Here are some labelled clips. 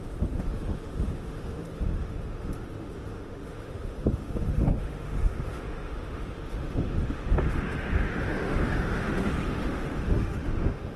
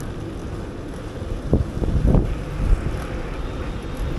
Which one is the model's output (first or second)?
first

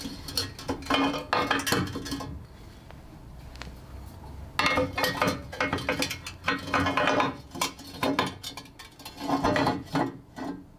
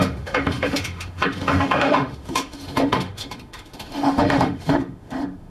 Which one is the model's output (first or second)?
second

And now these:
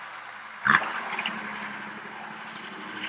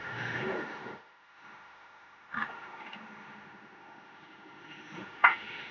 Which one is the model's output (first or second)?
second